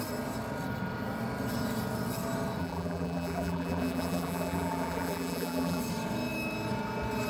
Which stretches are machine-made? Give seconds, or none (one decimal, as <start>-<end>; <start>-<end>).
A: 2.6-5.8